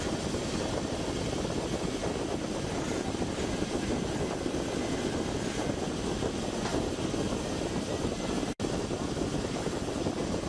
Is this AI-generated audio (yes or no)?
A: no